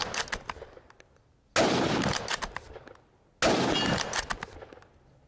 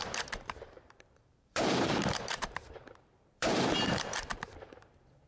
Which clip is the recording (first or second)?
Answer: first